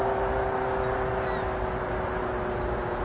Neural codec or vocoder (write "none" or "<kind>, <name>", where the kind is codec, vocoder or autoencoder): none